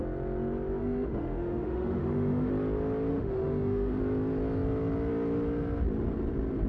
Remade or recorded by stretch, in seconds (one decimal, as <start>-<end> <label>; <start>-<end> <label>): 0.0-0.8 recorded; 0.8-2.5 remade; 2.5-3.1 recorded; 3.1-4.0 remade; 4.0-6.7 recorded